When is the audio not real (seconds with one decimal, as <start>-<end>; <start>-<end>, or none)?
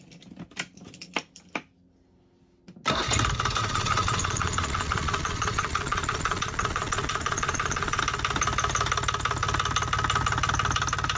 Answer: 3.6-8.0